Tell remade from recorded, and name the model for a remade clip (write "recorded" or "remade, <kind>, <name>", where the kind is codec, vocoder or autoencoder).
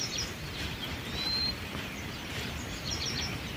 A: remade, vocoder, BigVGAN v2